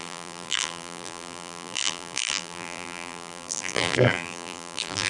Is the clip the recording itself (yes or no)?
no